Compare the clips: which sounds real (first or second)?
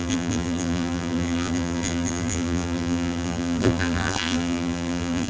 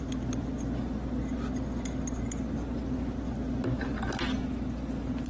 second